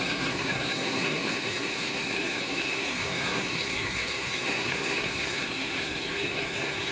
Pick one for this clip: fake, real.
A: fake